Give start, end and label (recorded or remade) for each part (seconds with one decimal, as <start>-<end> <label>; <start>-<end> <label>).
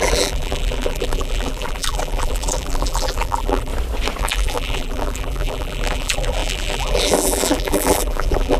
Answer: 0.0-3.7 remade; 3.7-4.2 recorded; 4.2-8.6 remade